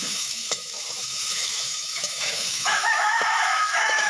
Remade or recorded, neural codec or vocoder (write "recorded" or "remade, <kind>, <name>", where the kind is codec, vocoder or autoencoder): remade, autoencoder, DAC-VAE